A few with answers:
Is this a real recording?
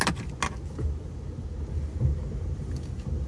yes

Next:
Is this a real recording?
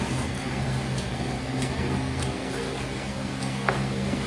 no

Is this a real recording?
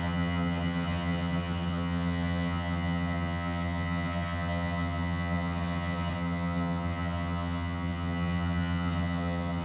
no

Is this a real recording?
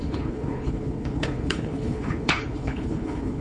no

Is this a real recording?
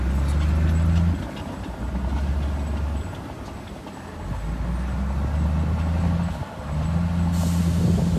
yes